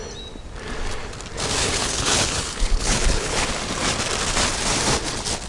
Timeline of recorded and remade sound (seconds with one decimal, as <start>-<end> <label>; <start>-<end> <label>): 0.0-1.6 recorded; 1.6-3.5 remade; 3.5-5.5 recorded